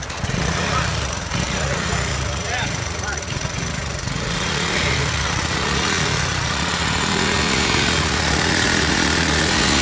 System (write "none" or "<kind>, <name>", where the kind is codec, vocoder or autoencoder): vocoder, Vocos